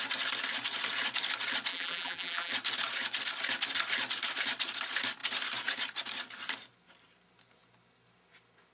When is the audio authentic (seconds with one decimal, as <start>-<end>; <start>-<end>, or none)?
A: 0.0-1.7; 2.5-8.7